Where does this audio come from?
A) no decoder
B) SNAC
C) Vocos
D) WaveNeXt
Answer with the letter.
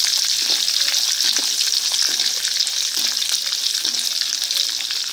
A